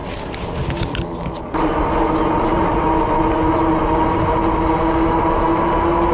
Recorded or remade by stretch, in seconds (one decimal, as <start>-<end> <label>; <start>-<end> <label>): 0.0-6.1 recorded